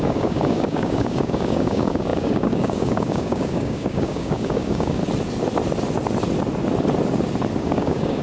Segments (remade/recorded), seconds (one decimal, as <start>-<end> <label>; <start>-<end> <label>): 0.0-5.0 remade; 5.0-7.6 recorded; 7.6-8.2 remade